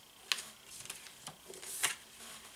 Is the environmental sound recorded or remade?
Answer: recorded